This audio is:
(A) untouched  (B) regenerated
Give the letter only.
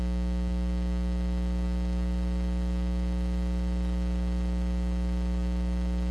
A